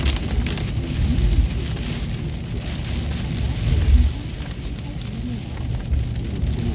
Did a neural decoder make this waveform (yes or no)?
no